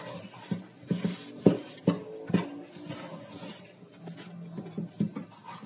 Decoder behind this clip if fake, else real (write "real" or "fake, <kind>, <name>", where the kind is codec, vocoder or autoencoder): real